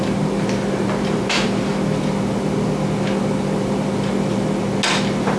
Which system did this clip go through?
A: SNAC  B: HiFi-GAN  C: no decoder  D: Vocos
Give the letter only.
C